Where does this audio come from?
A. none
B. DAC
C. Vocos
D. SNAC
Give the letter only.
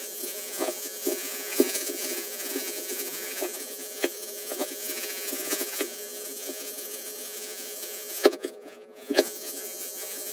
C